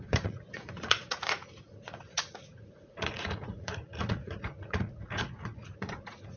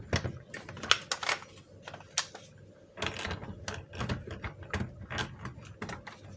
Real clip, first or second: second